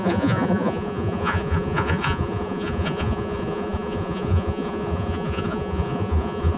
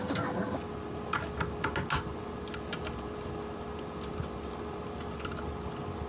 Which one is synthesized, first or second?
first